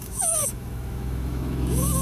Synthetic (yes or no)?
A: yes